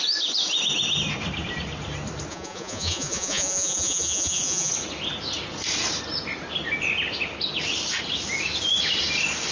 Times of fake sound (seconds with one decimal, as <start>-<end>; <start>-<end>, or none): 2.3-4.7